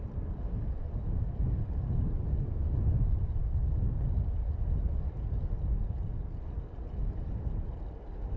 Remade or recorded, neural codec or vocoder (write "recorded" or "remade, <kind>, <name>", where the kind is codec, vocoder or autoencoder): recorded